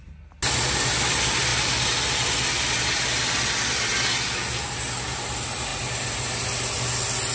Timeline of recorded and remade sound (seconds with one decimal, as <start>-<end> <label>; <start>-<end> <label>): 0.0-7.3 recorded